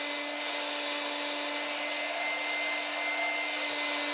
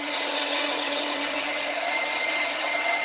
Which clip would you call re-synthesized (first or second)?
second